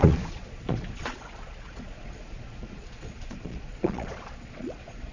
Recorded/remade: remade